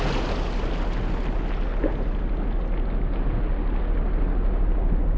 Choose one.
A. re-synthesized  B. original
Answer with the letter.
B